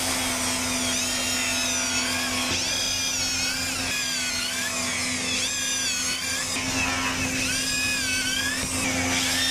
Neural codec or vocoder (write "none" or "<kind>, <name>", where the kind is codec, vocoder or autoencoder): none